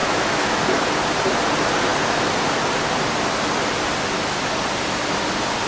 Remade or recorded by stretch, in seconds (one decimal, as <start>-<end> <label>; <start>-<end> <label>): 0.0-0.6 remade; 0.6-5.7 recorded